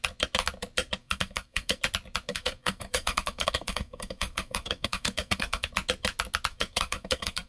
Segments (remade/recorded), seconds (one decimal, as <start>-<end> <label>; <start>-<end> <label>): 0.0-1.0 recorded; 1.0-1.8 remade; 1.8-2.3 recorded; 2.3-5.7 remade; 5.7-6.5 recorded; 6.5-7.5 remade